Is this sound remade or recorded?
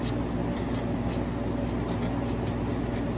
recorded